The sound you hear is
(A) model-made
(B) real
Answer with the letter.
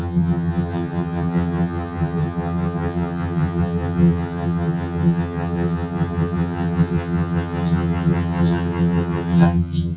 A